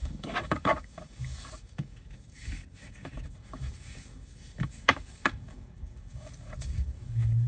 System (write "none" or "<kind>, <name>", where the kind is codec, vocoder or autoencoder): codec, DAC